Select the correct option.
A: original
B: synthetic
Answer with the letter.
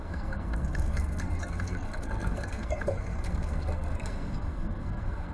B